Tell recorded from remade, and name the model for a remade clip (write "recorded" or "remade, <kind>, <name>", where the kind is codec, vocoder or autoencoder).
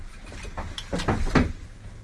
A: recorded